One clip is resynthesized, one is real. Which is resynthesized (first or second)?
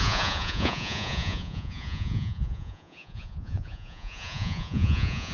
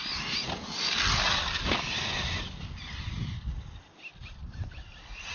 first